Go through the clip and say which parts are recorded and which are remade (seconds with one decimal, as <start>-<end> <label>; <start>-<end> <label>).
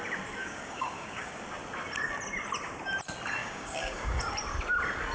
0.0-0.4 recorded; 0.4-1.4 remade; 1.4-3.4 recorded; 3.4-4.2 remade; 4.2-5.1 recorded